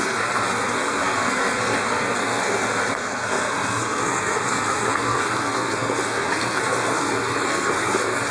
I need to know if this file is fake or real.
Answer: fake